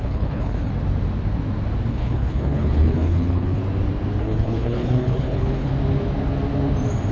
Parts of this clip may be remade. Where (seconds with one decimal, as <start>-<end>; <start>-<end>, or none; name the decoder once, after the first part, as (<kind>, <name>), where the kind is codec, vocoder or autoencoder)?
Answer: 0.0-0.7 (codec, HILCodec); 1.9-3.6; 4.2-5.7

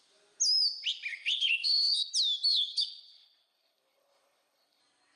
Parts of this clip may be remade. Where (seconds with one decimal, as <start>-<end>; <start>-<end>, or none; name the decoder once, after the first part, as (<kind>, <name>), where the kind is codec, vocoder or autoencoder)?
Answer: 1.1-2.1 (codec, HILCodec); 2.5-4.8

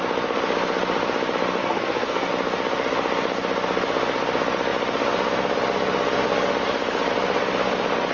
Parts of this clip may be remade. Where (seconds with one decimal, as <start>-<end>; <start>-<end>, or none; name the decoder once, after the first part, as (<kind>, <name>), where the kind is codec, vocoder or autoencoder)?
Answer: 1.6-2.3 (codec, SNAC)

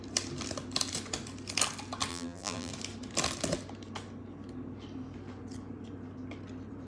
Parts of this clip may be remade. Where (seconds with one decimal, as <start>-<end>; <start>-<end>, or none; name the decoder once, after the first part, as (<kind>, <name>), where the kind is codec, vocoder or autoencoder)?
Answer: 2.1-2.7 (vocoder, BigVGAN v2)